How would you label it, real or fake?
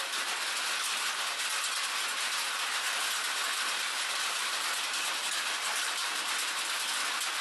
real